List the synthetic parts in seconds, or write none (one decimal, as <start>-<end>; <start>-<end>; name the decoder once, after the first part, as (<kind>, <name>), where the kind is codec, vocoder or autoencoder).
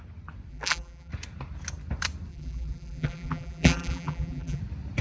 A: 0.5-1.1 (vocoder, BigVGAN v2); 2.3-4.6